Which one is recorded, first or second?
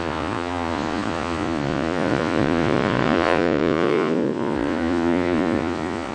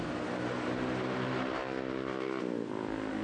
second